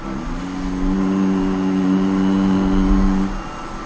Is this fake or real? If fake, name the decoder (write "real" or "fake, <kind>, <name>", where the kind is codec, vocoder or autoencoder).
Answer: real